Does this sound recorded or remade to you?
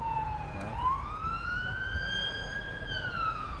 remade